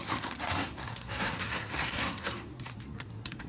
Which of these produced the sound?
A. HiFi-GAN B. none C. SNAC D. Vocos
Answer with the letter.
C